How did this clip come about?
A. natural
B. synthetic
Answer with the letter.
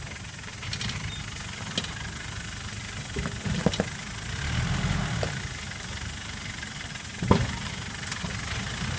A